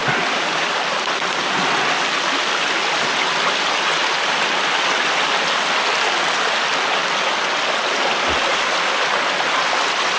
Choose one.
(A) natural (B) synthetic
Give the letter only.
A